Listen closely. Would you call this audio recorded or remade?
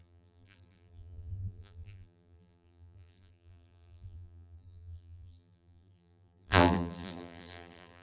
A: remade